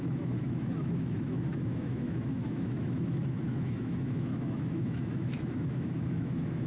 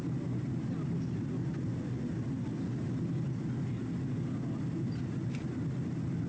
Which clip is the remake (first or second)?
first